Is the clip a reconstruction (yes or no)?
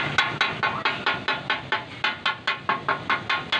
no